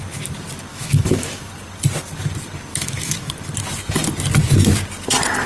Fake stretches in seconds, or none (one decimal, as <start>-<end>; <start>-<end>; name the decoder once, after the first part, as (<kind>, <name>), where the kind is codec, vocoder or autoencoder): 0.7-1.5 (autoencoder, DAC-VAE); 2.7-3.3